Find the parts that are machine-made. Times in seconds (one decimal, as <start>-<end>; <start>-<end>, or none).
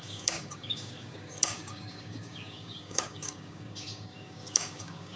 0.0-5.2